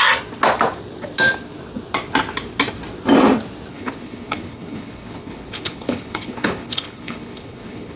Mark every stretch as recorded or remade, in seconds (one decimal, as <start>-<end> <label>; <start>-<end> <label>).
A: 0.0-3.7 recorded; 3.7-8.0 remade